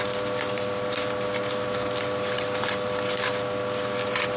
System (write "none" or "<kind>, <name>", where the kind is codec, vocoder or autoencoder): none